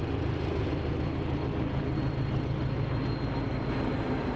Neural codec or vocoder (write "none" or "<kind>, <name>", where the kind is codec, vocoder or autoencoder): none